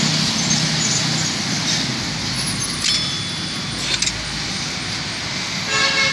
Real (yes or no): yes